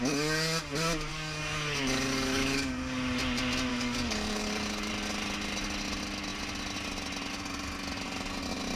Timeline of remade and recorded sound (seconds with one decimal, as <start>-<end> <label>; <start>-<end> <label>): 0.0-1.1 recorded; 1.1-2.7 remade; 2.7-3.7 recorded; 3.7-4.9 remade; 4.9-8.8 recorded